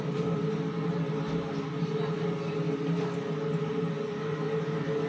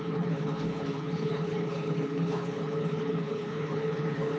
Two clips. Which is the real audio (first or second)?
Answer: first